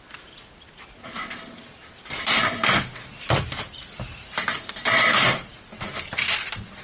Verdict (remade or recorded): recorded